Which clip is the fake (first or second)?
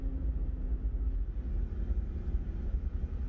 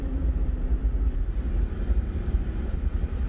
second